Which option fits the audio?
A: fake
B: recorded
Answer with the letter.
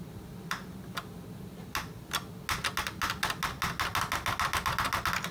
B